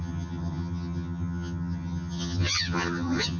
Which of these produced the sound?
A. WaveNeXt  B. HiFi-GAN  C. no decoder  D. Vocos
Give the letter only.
B